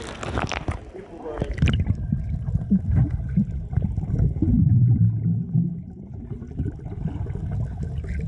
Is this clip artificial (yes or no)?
no